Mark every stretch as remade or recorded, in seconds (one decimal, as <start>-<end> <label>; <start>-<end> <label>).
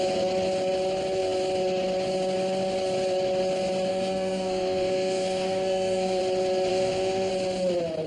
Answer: 0.0-3.9 recorded; 3.9-6.2 remade; 6.2-6.7 recorded; 6.7-7.3 remade; 7.3-8.1 recorded